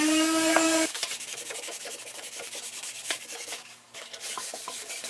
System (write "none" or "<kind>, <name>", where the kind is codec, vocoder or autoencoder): codec, DAC